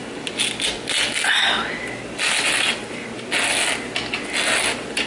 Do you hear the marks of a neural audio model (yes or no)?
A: no